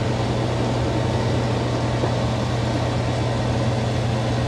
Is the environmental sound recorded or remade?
recorded